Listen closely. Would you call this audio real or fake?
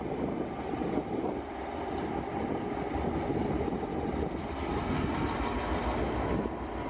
real